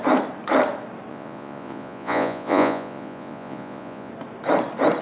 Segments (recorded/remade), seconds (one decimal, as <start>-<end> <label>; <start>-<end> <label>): 0.0-1.1 recorded; 1.1-4.1 remade; 4.1-5.0 recorded

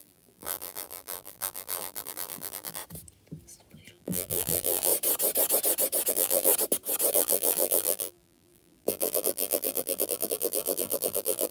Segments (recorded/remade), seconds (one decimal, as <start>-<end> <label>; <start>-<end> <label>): 0.0-2.8 remade; 2.8-3.9 recorded; 3.9-4.9 remade; 4.9-6.1 recorded; 6.1-6.5 remade; 6.5-7.1 recorded; 7.1-11.5 remade

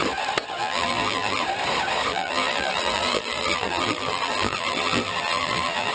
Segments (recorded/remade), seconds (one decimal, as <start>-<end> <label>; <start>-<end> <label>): 0.0-0.6 recorded; 0.6-1.4 remade; 1.4-2.1 recorded; 2.1-5.9 remade

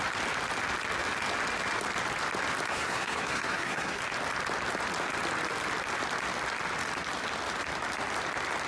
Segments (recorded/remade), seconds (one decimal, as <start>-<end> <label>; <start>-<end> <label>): 0.0-2.7 recorded; 2.7-4.0 remade; 4.0-8.7 recorded